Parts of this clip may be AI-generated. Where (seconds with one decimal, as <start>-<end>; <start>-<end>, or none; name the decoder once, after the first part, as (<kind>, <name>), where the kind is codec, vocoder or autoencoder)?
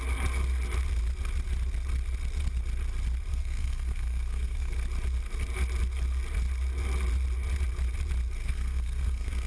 3.3-4.7 (codec, SNAC); 8.4-9.5